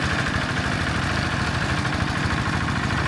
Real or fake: real